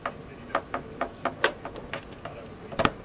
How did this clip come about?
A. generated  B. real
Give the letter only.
B